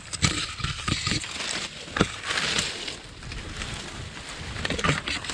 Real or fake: real